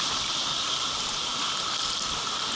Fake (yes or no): no